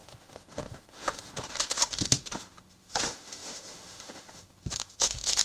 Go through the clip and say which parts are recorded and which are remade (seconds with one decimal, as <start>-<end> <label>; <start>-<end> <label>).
0.0-5.4 remade